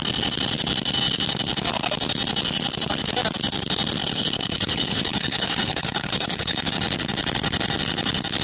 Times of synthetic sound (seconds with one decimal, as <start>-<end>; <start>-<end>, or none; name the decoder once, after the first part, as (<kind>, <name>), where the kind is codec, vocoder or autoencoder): 4.0-6.7 (codec, HILCodec)